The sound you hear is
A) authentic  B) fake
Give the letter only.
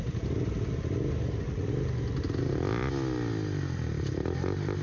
A